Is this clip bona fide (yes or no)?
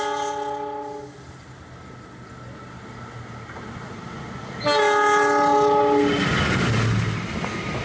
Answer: yes